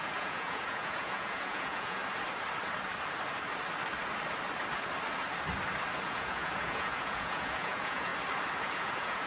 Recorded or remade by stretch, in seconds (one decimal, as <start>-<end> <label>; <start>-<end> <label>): 0.0-2.0 remade; 2.0-6.1 recorded; 6.1-8.1 remade; 8.1-8.6 recorded; 8.6-9.3 remade